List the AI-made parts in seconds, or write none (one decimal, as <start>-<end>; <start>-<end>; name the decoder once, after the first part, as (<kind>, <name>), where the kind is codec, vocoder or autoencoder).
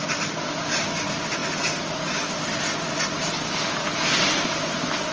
none